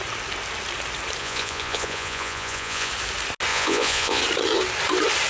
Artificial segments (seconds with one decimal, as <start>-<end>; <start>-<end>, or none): 1.2-2.9; 3.5-4.2

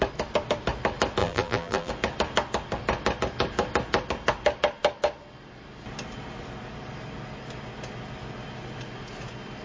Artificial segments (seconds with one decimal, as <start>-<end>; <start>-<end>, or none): 1.2-1.9

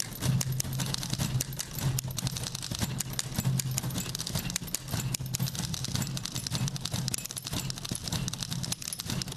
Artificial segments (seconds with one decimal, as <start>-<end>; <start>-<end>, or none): none